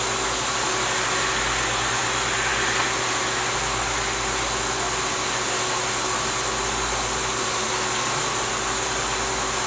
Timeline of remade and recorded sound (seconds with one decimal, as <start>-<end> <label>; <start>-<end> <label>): 0.0-9.7 recorded